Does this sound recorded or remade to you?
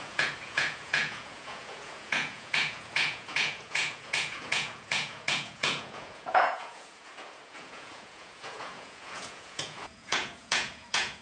remade